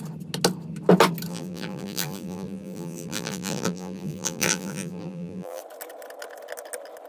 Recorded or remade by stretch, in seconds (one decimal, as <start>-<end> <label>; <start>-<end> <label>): 0.0-1.3 recorded; 1.3-5.6 remade; 5.6-7.1 recorded